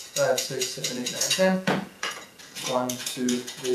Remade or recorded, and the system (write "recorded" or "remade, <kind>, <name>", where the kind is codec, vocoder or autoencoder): remade, vocoder, Vocos